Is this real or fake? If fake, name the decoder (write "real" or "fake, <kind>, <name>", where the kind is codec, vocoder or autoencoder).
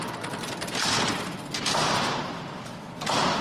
real